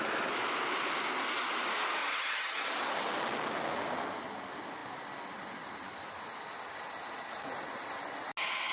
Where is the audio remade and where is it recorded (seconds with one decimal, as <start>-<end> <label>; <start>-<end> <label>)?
0.0-2.0 recorded; 2.0-2.7 remade; 2.7-8.7 recorded